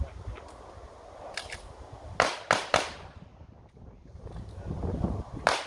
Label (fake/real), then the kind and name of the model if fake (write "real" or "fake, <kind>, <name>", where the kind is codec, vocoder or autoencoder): real